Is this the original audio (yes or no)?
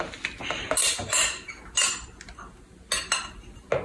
yes